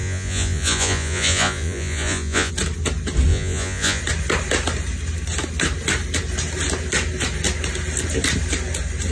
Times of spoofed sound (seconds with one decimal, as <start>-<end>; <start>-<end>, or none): 0.0-2.5; 3.3-4.0